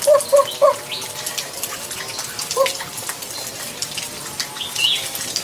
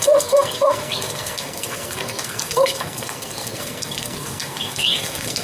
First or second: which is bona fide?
first